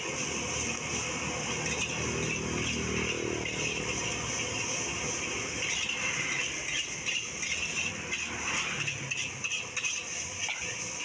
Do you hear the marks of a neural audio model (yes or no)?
no